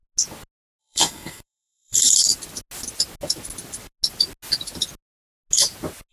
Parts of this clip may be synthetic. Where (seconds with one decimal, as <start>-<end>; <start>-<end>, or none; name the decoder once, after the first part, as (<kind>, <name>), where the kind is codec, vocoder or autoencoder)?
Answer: 0.8-2.0 (codec, SNAC)